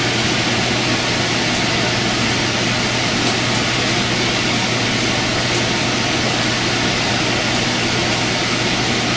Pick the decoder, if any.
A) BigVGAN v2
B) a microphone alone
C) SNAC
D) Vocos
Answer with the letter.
B